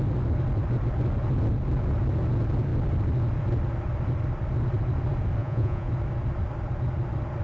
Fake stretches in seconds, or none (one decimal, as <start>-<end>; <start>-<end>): 5.4-5.9